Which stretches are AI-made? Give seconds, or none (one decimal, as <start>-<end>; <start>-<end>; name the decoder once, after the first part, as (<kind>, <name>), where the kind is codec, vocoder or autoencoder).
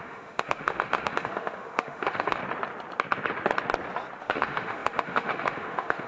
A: 0.0-2.4 (autoencoder, DAC-VAE); 4.2-6.1